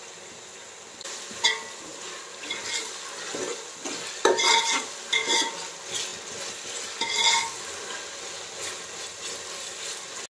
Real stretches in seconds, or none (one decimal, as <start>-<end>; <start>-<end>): 0.0-10.4